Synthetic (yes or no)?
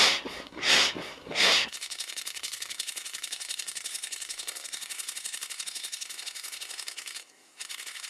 yes